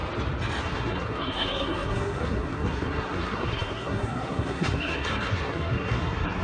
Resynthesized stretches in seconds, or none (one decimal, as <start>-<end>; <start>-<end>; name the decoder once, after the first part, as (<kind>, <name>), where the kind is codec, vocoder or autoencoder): 0.6-6.4 (codec, SNAC)